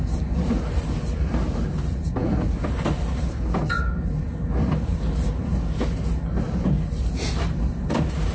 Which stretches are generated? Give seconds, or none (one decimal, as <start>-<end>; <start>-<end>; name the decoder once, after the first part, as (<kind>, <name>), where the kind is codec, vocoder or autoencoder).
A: none